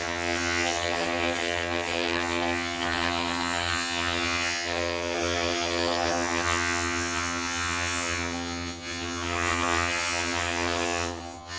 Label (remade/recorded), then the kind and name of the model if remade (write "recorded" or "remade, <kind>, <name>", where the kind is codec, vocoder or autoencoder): remade, vocoder, HiFi-GAN